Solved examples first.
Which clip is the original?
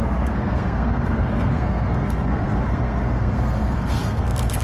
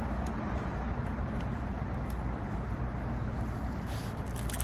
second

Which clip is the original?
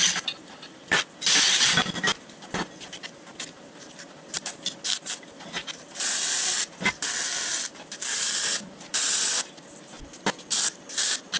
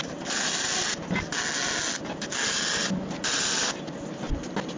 second